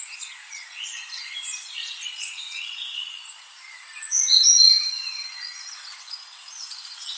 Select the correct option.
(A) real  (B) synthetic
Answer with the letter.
B